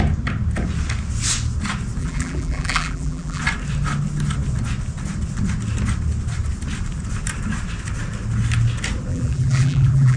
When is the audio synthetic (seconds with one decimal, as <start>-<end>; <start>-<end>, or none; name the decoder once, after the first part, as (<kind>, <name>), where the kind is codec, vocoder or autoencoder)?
2.0-3.4 (vocoder, BigVGAN v2); 9.1-10.2